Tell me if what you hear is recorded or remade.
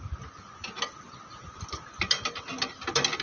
recorded